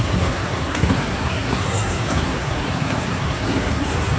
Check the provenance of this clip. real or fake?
fake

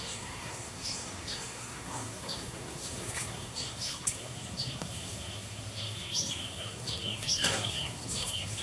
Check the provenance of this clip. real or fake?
fake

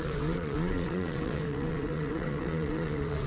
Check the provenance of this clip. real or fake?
fake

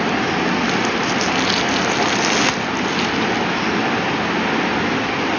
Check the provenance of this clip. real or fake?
real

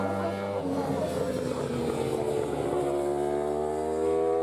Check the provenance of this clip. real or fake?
real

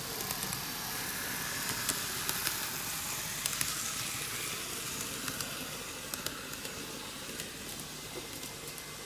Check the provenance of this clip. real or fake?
real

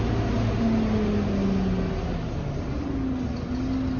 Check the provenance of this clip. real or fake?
real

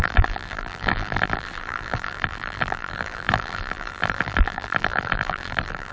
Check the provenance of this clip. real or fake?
fake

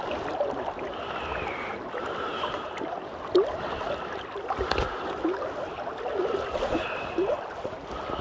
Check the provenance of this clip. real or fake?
real